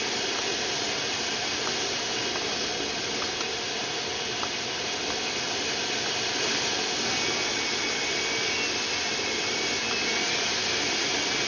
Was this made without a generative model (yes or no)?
yes